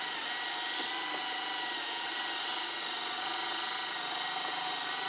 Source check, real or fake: real